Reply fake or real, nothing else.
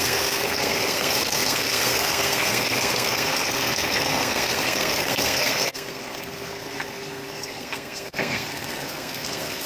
fake